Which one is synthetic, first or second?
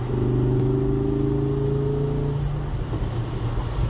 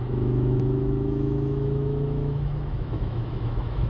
second